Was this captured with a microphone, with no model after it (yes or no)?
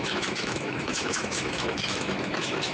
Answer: no